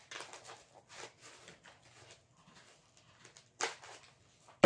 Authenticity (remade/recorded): recorded